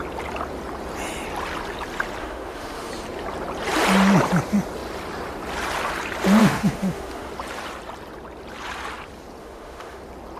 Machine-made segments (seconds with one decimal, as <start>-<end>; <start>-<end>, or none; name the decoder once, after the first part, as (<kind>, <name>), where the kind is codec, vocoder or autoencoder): 2.2-2.9 (autoencoder, DAC-VAE); 6.4-7.3; 9.4-10.0